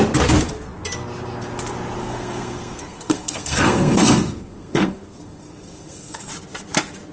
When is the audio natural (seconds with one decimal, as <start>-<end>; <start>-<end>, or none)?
0.0-2.0; 6.3-7.1